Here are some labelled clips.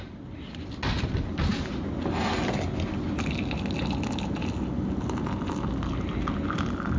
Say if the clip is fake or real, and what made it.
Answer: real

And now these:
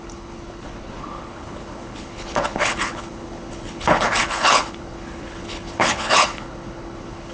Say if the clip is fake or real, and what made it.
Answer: fake, codec, HILCodec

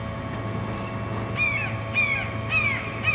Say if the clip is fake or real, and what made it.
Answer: real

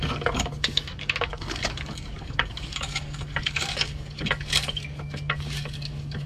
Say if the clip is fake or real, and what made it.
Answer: fake, codec, DAC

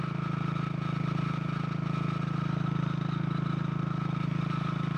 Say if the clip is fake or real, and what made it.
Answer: real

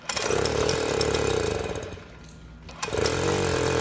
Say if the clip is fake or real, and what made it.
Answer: real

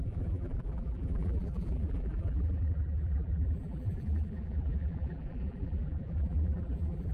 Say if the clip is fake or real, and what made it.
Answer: fake, vocoder, BigVGAN v2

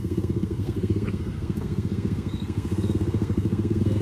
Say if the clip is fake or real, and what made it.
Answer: fake, codec, SNAC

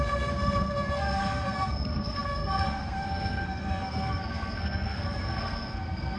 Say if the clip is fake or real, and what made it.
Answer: fake, codec, SNAC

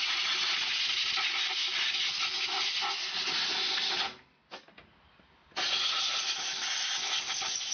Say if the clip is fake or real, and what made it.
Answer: real